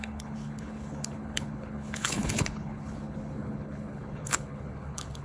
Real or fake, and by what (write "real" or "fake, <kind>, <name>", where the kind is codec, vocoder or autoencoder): fake, codec, HILCodec